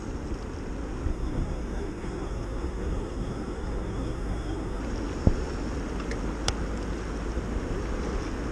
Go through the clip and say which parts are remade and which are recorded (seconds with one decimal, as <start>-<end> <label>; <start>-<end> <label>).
0.0-1.1 recorded; 1.1-4.8 remade; 4.8-8.5 recorded